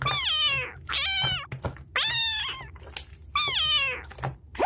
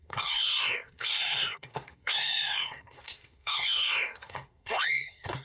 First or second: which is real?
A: first